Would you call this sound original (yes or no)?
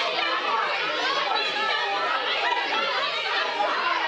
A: yes